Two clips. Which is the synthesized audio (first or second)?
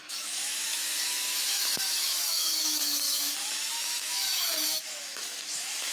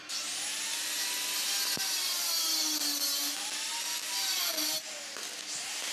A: first